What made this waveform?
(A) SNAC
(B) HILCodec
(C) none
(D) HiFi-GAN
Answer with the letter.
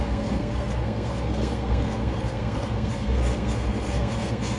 A